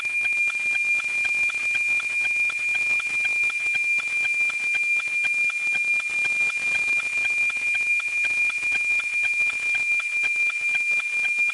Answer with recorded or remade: recorded